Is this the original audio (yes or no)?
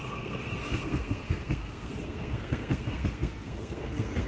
no